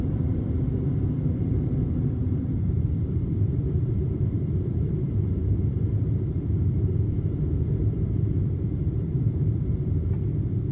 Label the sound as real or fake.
fake